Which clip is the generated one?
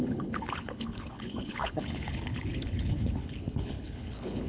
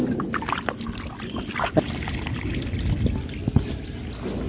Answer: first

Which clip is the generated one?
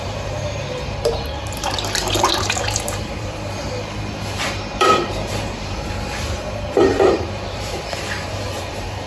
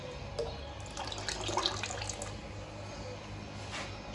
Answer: first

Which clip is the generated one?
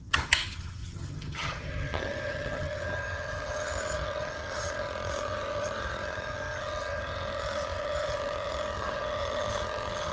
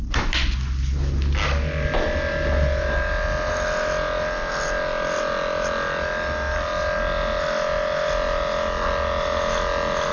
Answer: first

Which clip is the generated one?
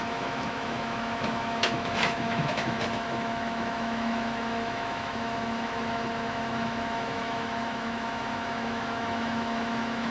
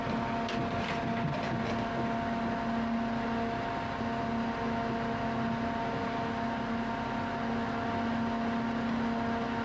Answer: first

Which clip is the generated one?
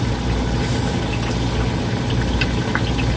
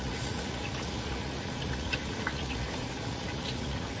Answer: second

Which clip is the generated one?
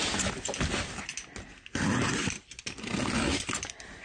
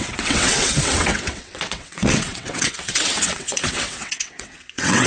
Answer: second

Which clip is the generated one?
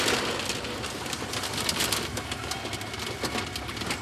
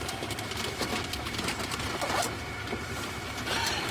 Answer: second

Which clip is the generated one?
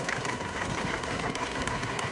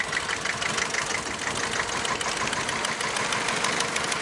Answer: first